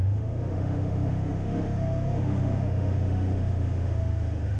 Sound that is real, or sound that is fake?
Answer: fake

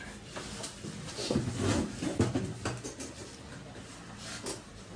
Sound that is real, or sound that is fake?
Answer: real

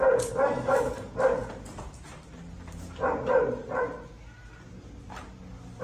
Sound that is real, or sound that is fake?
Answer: real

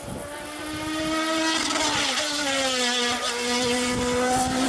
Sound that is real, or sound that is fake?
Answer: real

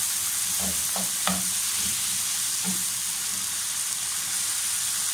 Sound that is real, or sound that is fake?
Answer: real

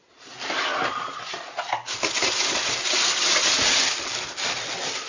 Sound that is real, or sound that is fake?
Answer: real